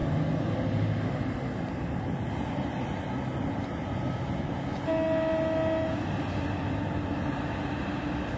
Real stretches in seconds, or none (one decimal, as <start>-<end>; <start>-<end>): 0.0-8.4